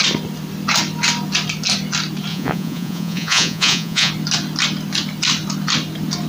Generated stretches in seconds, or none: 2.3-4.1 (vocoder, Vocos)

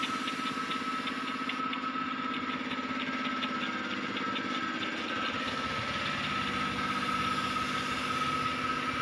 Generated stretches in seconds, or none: none

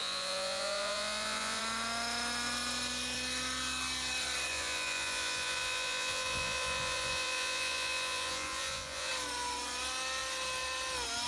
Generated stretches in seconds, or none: 0.0-1.6 (vocoder, Vocos); 4.5-9.1